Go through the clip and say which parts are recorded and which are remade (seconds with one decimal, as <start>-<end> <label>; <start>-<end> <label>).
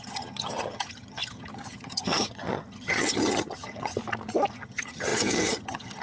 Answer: 0.0-4.0 remade; 4.0-4.5 recorded; 4.5-6.0 remade